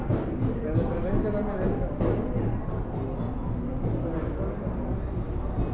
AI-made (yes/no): no